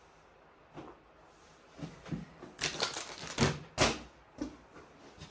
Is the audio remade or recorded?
recorded